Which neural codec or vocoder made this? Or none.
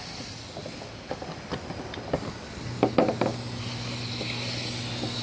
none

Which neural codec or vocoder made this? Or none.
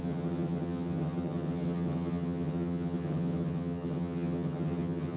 vocoder, HiFi-GAN